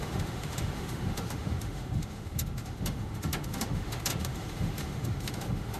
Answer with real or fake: fake